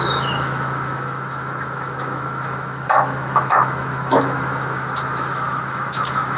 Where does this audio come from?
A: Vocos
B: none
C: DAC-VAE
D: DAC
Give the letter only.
C